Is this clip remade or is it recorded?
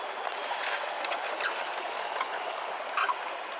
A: recorded